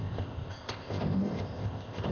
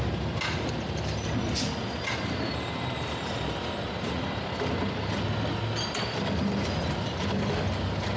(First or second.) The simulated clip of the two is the first